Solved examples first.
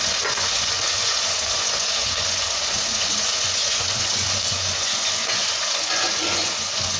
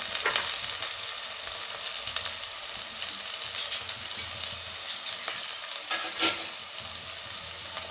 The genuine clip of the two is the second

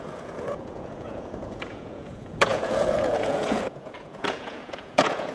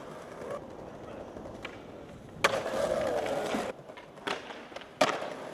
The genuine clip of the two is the second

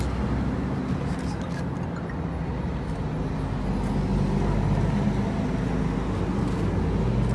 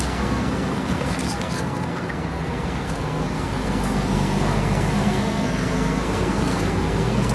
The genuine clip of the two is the first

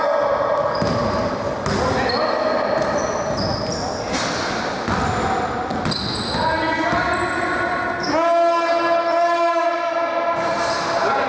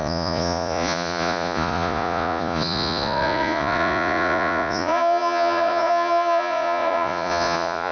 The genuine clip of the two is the first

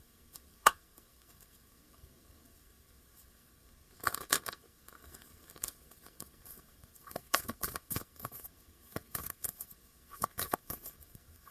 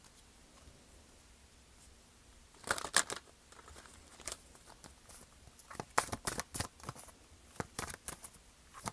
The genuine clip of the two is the second